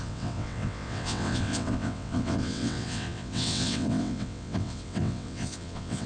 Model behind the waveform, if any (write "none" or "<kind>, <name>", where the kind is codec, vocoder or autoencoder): vocoder, WaveNeXt